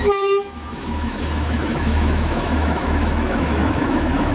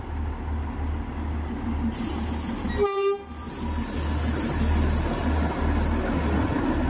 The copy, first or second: first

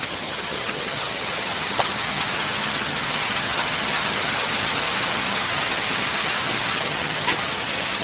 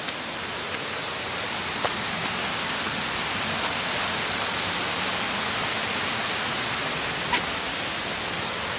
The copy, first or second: first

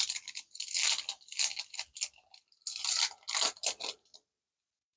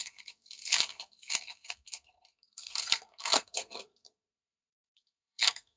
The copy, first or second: second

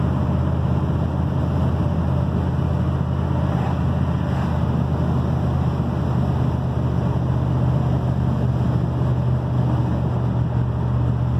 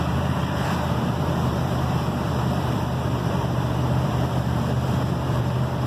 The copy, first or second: second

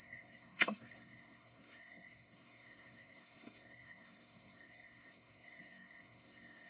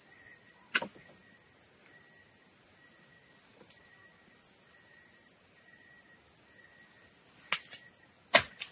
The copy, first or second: first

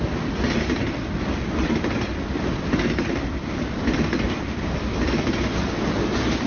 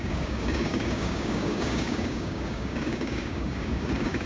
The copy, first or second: second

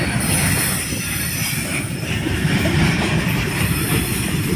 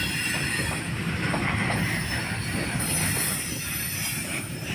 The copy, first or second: first